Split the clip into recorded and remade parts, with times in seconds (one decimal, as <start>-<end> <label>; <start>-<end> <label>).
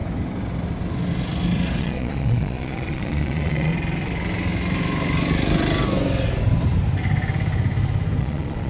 0.0-1.8 recorded; 1.8-3.7 remade; 3.7-8.2 recorded; 8.2-8.7 remade